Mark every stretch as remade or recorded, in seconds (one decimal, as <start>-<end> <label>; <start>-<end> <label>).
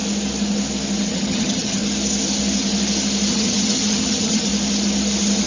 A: 0.0-1.1 recorded; 1.1-1.8 remade; 1.8-3.3 recorded; 3.3-4.5 remade; 4.5-5.5 recorded